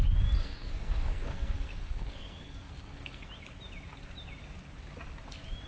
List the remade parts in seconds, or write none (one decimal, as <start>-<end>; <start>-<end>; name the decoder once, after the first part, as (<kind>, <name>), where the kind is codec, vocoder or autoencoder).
0.4-3.3 (codec, SNAC)